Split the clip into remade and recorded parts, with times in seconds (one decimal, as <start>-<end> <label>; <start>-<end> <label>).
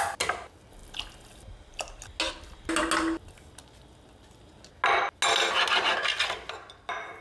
0.0-7.2 recorded